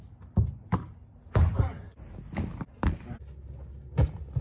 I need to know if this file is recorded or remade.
recorded